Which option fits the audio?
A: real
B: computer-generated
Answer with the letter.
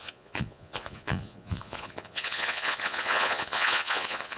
B